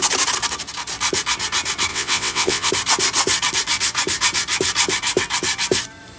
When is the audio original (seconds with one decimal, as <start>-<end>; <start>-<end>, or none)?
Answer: 0.0-1.9; 2.7-6.2